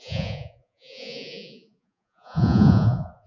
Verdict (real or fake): fake